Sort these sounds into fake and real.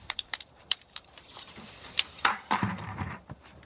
fake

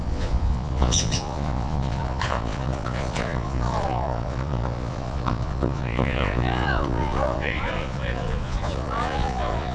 fake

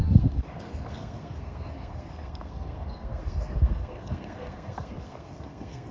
fake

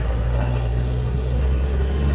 fake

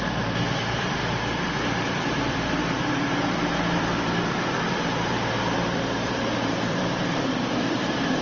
fake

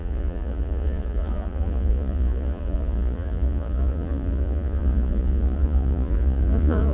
fake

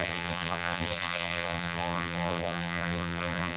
fake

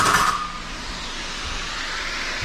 fake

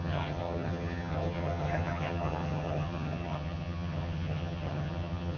fake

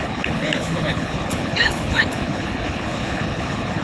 fake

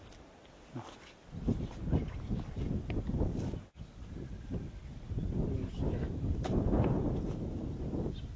real